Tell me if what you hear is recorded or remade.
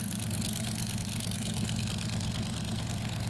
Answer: remade